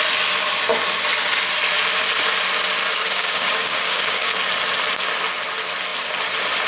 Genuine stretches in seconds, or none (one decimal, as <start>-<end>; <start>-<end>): 0.0-2.9; 4.4-6.7